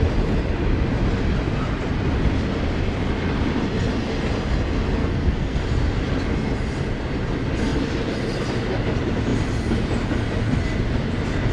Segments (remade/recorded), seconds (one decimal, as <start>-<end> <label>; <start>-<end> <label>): 0.0-5.0 recorded; 5.0-5.6 remade; 5.6-11.5 recorded